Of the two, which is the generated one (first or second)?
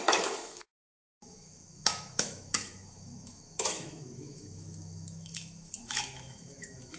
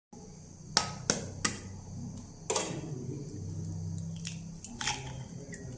first